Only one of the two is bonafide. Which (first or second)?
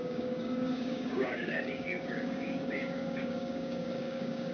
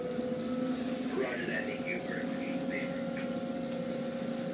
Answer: second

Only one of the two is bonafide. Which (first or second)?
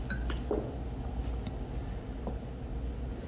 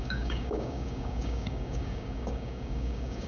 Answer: first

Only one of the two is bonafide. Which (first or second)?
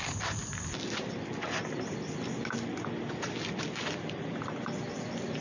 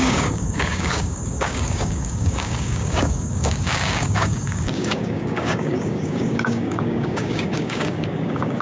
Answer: first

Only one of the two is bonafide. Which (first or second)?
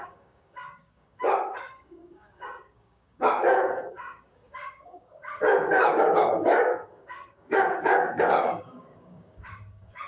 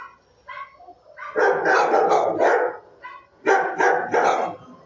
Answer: second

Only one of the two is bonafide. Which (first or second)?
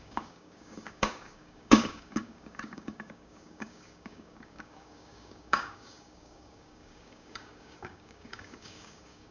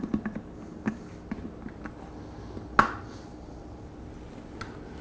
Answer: second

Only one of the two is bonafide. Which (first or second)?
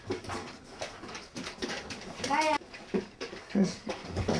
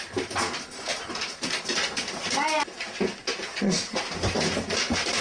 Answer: second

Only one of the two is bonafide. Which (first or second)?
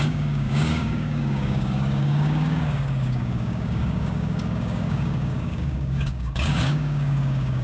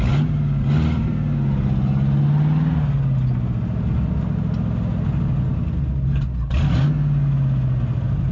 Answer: second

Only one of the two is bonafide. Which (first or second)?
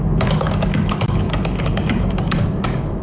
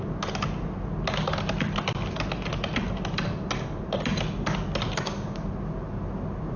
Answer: second